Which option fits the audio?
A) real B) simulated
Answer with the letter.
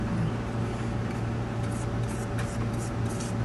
A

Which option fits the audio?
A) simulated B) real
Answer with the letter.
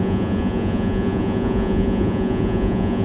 A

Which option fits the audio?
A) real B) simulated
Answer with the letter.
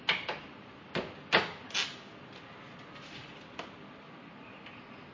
A